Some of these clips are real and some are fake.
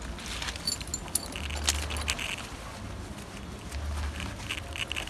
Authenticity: real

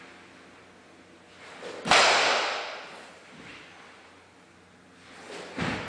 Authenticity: real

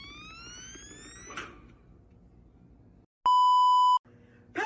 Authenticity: real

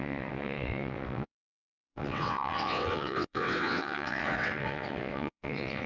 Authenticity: fake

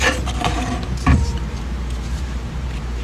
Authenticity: fake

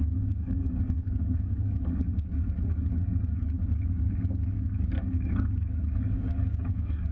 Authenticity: fake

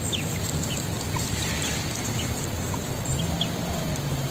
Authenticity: real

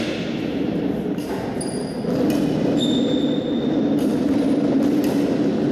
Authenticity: real